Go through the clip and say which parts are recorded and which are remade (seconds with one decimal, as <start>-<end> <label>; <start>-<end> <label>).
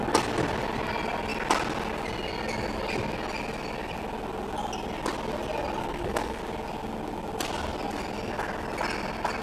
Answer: 0.0-5.8 recorded; 5.8-6.4 remade; 6.4-9.4 recorded